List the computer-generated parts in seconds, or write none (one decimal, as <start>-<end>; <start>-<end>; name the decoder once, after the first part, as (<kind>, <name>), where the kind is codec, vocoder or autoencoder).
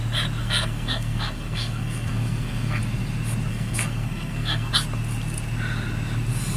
0.4-2.8 (codec, SNAC); 3.5-4.7